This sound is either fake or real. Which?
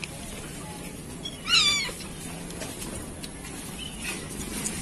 real